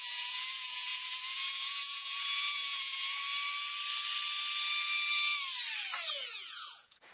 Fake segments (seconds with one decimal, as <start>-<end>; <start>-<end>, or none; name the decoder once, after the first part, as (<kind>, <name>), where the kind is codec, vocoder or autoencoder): 0.0-3.2 (vocoder, Vocos); 6.1-7.1